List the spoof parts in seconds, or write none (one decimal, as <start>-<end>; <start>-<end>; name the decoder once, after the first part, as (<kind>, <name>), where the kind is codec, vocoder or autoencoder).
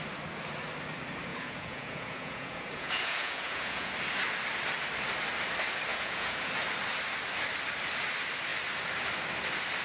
1.3-3.9 (vocoder, Vocos); 5.9-6.5